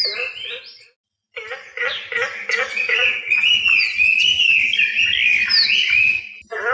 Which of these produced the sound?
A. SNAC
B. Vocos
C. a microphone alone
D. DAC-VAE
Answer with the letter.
C